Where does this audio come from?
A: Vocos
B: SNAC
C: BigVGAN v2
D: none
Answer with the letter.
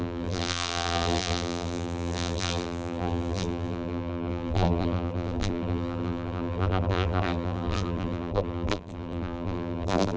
C